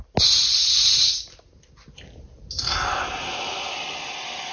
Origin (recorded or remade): recorded